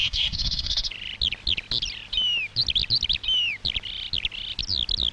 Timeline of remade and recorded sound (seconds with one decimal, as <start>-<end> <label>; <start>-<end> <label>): 0.0-0.9 remade; 0.9-5.1 recorded